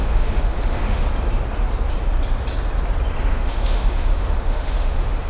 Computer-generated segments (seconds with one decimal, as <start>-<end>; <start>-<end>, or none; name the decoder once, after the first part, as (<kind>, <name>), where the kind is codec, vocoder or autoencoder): 0.0-1.0 (autoencoder, DAC-VAE); 3.3-5.3

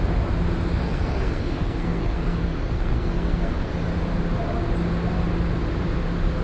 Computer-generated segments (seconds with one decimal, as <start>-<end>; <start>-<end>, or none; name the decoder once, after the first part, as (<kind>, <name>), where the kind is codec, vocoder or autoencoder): 0.8-3.7 (codec, SNAC)